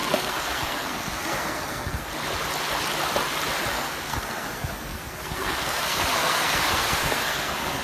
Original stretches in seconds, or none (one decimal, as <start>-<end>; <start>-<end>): 2.1-3.7